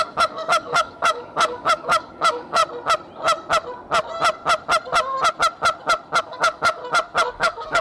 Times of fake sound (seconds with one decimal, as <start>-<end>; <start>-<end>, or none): 0.0-2.6; 6.2-6.8; 7.3-7.8